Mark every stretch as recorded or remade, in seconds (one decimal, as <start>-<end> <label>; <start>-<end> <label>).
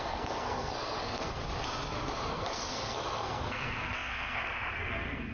0.0-1.4 remade; 1.4-2.3 recorded; 2.3-5.3 remade